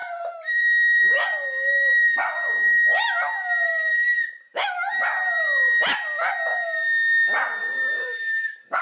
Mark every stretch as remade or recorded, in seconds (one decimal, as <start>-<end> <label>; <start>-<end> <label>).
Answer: 0.0-1.0 remade; 1.0-7.6 recorded; 7.6-8.1 remade; 8.1-8.8 recorded